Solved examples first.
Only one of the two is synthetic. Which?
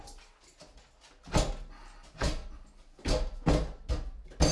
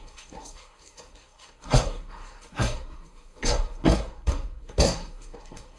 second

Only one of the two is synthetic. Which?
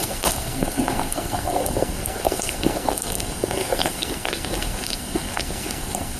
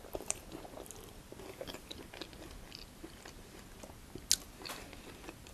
first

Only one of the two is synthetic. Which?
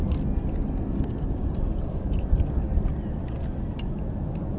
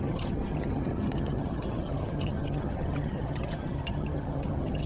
second